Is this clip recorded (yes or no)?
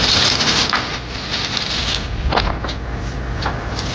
yes